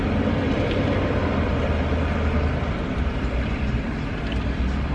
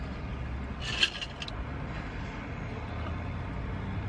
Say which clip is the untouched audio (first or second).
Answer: second